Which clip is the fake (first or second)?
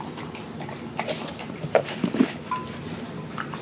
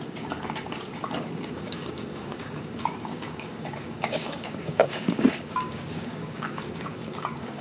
second